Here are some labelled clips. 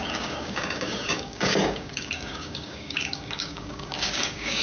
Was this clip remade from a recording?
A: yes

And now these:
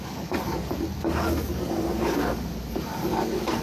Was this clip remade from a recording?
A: yes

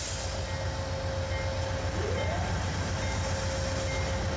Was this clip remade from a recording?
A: no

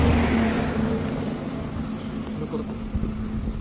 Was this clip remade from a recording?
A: no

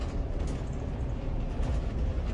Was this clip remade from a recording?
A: no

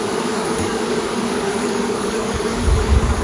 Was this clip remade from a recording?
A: yes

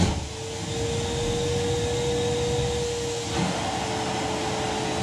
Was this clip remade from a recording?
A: no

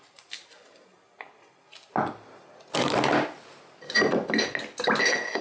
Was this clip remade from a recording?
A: no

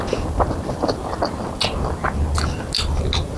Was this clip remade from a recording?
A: no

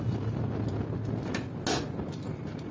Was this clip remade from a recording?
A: no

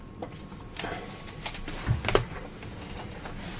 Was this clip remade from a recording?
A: no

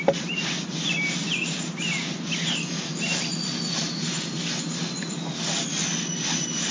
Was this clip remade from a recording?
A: no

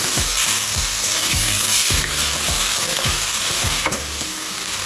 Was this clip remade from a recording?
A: yes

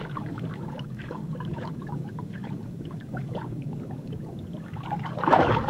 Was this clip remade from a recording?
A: yes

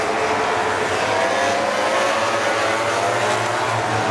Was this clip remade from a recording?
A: no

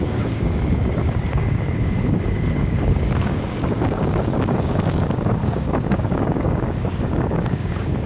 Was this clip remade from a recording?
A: yes